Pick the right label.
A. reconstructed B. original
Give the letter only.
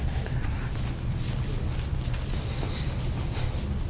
B